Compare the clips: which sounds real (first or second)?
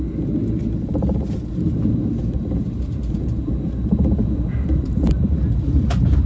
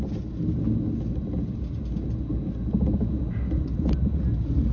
second